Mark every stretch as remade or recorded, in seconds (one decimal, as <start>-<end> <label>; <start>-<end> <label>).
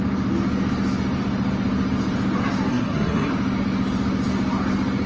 0.0-2.7 recorded; 2.7-3.3 remade; 3.3-5.1 recorded